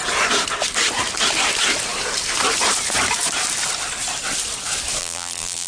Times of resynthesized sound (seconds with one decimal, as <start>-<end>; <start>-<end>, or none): 5.0-5.7